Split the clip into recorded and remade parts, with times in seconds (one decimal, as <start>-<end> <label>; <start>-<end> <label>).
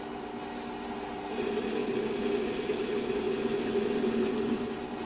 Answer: 0.0-5.0 recorded